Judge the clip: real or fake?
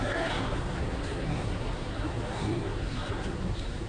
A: fake